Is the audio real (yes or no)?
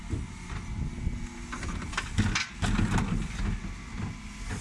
yes